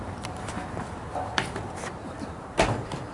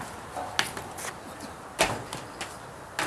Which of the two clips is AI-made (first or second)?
first